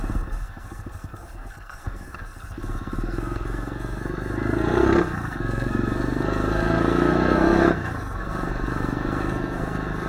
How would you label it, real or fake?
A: fake